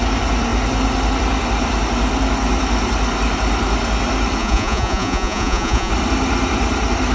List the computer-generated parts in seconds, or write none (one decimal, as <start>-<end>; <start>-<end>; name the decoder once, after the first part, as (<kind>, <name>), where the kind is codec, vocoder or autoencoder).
4.4-5.9 (vocoder, Vocos)